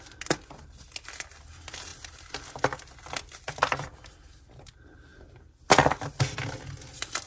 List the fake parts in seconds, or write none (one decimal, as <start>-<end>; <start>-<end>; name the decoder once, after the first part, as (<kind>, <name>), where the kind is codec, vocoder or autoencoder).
1.9-4.3 (vocoder, BigVGAN v2)